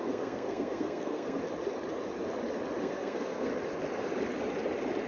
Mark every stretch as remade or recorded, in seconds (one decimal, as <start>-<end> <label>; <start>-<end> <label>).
0.0-1.4 remade; 1.4-2.8 recorded; 2.8-3.5 remade; 3.5-5.1 recorded